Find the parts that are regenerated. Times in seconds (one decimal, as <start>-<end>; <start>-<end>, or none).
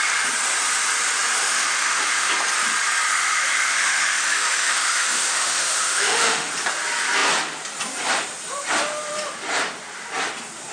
1.4-2.3; 3.1-6.5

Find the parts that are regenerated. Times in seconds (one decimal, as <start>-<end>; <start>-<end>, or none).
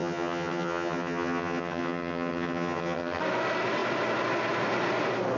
0.0-3.2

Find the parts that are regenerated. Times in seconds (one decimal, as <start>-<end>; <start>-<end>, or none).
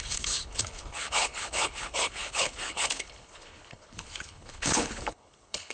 0.0-5.7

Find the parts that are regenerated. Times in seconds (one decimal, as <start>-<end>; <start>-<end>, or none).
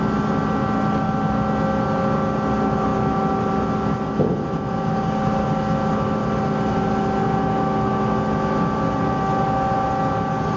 none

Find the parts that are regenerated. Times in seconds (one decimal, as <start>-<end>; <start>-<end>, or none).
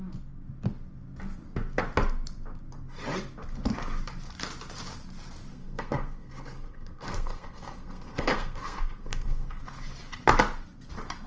5.5-9.6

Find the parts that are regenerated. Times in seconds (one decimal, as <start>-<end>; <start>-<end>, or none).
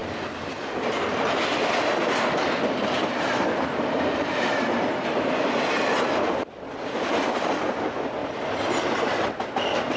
3.0-5.8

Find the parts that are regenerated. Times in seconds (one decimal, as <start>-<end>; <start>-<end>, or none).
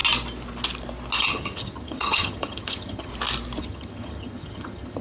1.2-3.1; 3.6-5.0